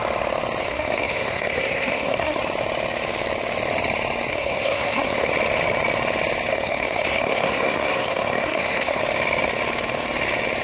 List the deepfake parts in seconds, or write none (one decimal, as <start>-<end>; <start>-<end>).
0.6-2.4; 4.3-5.3; 6.5-9.0